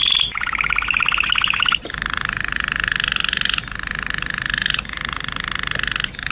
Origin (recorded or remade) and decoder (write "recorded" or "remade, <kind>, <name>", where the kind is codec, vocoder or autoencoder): recorded